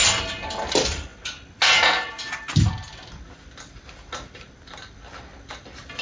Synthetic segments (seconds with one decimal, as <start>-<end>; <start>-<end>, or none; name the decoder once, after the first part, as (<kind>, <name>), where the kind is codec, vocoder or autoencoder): none